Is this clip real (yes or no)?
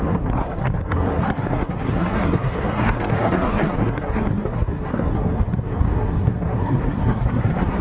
no